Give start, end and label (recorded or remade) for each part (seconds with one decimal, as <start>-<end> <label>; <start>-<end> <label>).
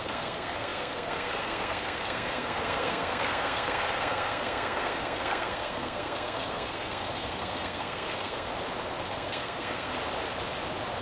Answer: 0.0-8.5 remade; 8.5-9.1 recorded; 9.1-9.9 remade; 9.9-11.0 recorded